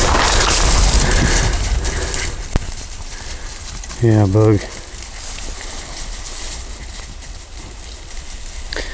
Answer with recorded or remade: recorded